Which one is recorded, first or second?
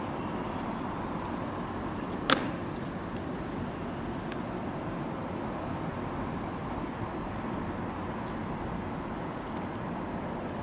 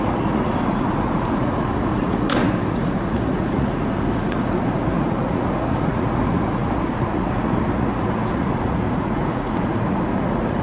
first